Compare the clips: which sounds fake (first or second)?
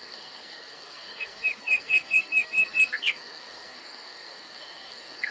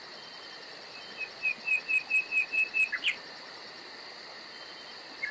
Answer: first